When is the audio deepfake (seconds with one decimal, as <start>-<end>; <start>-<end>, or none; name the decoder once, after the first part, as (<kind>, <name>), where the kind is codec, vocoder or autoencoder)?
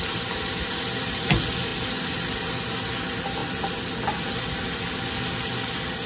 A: none